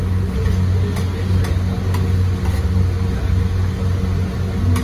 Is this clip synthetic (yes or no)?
no